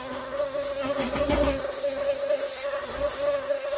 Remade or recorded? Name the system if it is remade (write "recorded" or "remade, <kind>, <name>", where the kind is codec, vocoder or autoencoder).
remade, codec, SNAC